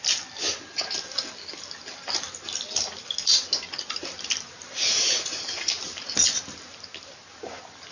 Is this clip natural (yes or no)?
yes